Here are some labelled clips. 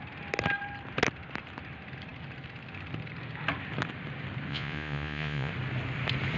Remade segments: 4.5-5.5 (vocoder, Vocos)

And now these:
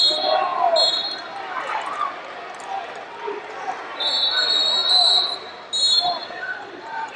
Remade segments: 6.2-7.2 (vocoder, Vocos)

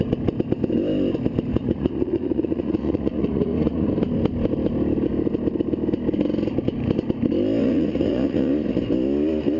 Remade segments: 1.5-3.9 (vocoder, Vocos); 7.6-8.5

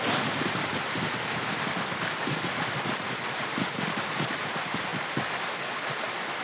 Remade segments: none